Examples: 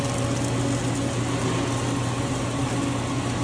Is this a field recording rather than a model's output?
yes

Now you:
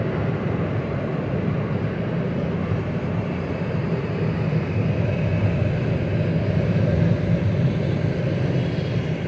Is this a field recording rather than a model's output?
yes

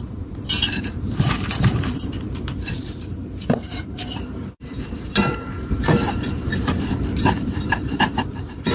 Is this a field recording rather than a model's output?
no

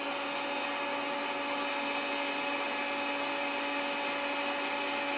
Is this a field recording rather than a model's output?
yes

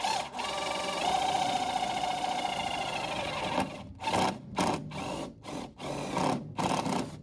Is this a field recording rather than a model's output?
yes